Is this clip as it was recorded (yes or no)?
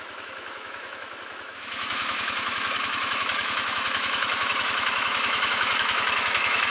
no